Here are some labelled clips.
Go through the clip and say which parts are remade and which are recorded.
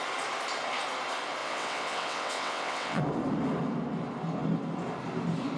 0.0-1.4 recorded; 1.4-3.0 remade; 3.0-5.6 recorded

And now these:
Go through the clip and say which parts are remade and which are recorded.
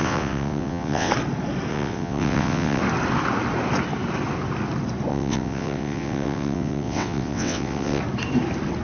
0.0-1.1 remade; 1.1-1.7 recorded; 1.7-2.8 remade; 2.8-5.1 recorded; 5.1-8.0 remade; 8.0-8.8 recorded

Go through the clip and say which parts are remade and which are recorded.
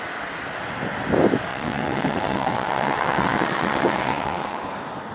0.0-1.5 recorded; 1.5-4.6 remade; 4.6-5.1 recorded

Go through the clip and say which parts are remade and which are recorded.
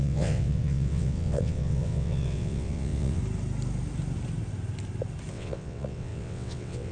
0.0-3.2 remade; 3.2-5.3 recorded; 5.3-6.9 remade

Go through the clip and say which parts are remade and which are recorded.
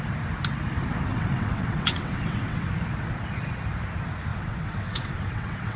0.0-1.1 recorded; 1.1-2.7 remade; 2.7-4.3 recorded; 4.3-5.8 remade